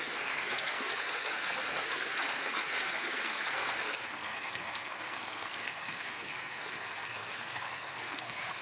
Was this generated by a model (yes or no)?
yes